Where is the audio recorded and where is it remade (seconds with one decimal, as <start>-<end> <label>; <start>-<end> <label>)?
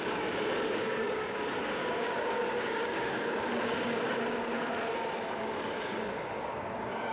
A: 0.0-4.7 remade; 4.7-5.4 recorded; 5.4-7.1 remade